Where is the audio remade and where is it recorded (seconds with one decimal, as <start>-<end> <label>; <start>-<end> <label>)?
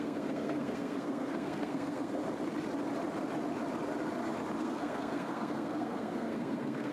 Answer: 0.0-2.2 remade; 2.2-4.6 recorded; 4.6-6.9 remade